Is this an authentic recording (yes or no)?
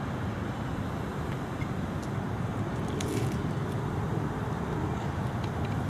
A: yes